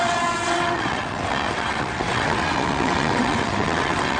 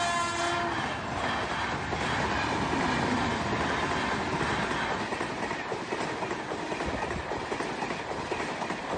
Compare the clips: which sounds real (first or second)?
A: second